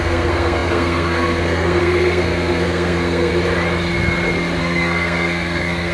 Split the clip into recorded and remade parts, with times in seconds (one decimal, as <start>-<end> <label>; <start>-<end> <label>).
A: 0.0-3.3 remade; 3.3-4.6 recorded; 4.6-5.9 remade